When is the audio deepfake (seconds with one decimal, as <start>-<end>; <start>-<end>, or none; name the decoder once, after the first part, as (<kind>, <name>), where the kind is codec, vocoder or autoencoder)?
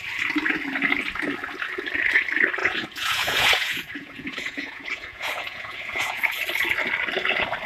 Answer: 2.6-6.4 (vocoder, Vocos)